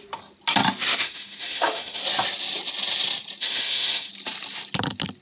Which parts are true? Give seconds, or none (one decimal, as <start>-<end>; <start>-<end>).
0.0-1.0; 2.0-3.4; 4.1-5.2